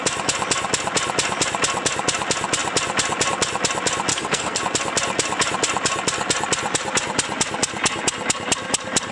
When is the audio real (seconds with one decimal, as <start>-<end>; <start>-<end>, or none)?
0.0-4.1; 4.6-9.1